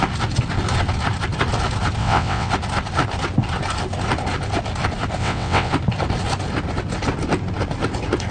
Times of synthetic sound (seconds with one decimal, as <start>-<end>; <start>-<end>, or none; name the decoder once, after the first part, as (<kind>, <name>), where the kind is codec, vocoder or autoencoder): 2.0-2.5 (vocoder, WaveNeXt); 5.2-5.7